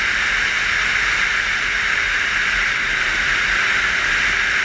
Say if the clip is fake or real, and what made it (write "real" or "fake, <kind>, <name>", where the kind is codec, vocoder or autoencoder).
real